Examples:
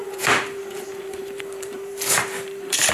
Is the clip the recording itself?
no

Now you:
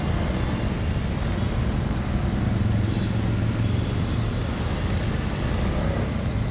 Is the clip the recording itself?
yes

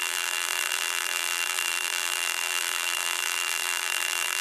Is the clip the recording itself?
no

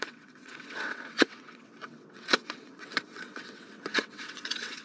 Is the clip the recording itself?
no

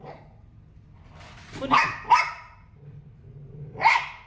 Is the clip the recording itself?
yes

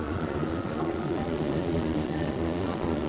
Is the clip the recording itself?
no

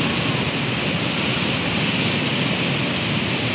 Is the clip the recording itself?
yes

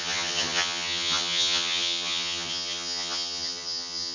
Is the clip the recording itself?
no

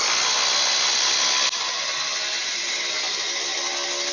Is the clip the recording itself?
yes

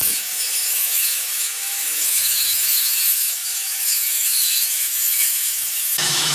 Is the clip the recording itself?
no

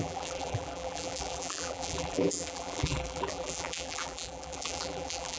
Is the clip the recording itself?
no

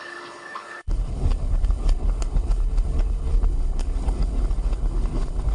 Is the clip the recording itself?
no